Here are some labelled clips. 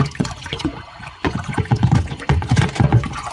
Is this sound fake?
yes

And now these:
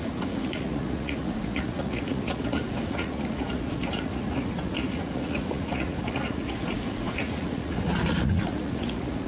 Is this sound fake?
yes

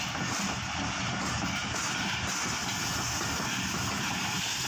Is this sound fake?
no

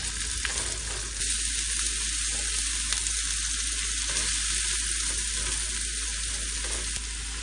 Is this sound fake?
no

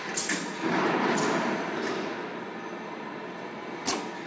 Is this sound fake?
no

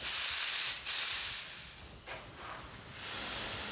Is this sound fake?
no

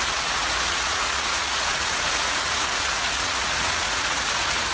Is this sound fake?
yes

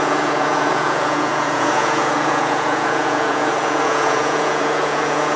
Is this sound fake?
yes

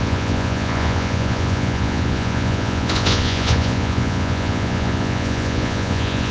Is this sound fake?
yes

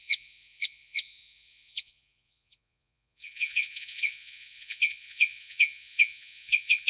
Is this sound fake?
yes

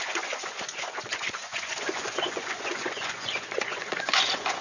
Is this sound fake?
yes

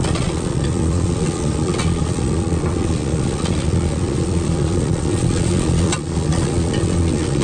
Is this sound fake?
yes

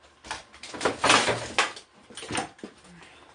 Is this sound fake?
no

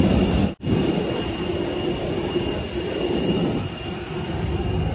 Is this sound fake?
no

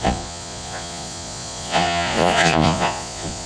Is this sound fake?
yes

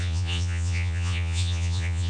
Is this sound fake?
yes